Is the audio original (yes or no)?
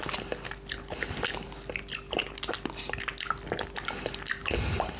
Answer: yes